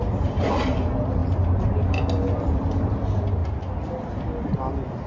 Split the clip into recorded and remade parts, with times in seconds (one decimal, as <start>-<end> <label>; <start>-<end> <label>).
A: 0.0-5.1 recorded